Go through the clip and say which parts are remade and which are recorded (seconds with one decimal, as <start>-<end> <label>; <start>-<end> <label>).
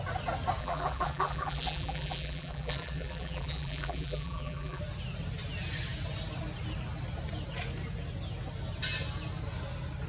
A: 0.0-0.6 recorded; 0.6-4.8 remade; 4.8-10.1 recorded